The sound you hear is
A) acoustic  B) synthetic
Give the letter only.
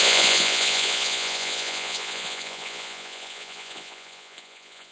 B